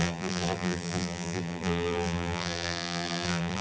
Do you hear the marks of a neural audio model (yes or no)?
yes